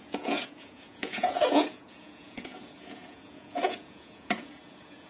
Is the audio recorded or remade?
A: remade